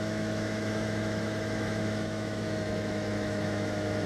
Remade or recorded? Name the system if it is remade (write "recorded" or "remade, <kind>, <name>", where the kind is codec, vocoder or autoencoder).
remade, autoencoder, DAC-VAE